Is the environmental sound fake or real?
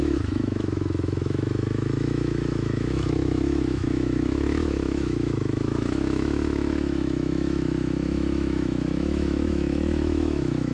fake